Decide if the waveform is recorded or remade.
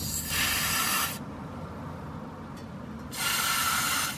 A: recorded